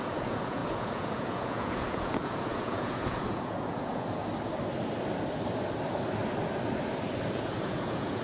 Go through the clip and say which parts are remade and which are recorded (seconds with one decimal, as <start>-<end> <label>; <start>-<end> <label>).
0.0-4.2 remade; 4.2-7.3 recorded; 7.3-8.2 remade